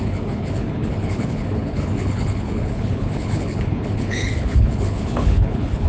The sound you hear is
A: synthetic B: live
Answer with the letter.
A